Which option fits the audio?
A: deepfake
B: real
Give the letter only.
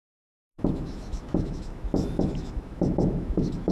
A